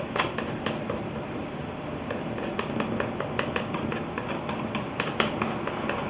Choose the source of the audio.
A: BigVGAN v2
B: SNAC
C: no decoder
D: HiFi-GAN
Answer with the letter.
C